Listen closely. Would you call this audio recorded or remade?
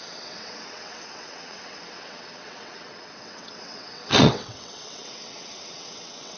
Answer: remade